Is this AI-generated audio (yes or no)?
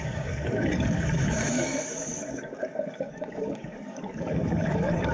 yes